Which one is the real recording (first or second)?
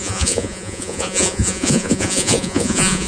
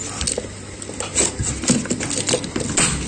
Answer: second